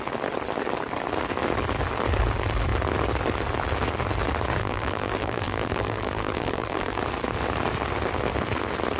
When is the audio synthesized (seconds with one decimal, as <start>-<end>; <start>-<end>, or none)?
4.6-7.0